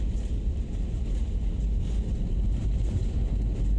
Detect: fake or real real